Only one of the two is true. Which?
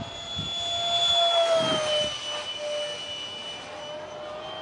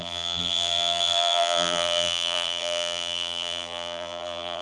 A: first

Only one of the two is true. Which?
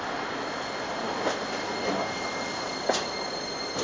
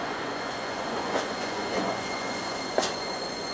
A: first